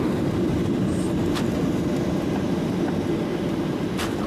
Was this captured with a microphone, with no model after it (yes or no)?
yes